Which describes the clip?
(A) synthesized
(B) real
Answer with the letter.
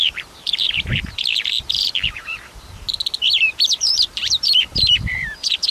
A